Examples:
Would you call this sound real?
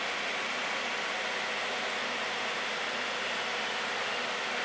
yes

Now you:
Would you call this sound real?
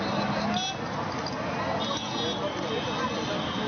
yes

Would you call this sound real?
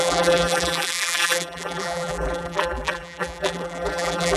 no